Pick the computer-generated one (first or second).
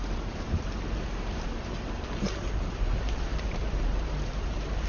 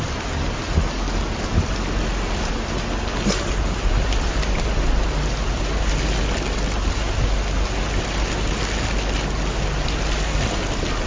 first